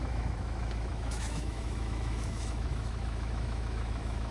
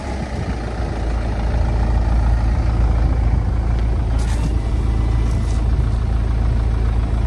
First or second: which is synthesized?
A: first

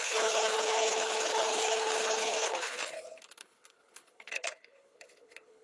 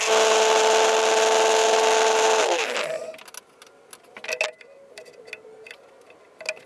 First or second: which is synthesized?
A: first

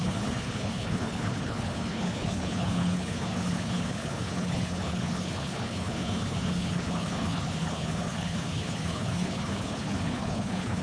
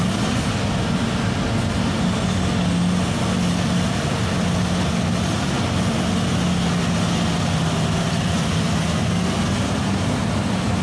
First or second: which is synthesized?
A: first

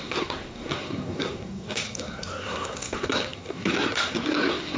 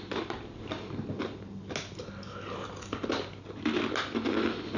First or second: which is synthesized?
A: first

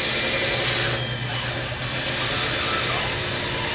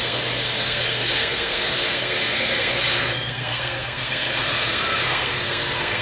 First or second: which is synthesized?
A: second